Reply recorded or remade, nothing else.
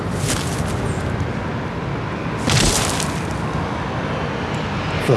recorded